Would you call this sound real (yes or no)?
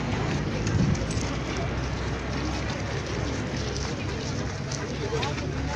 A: yes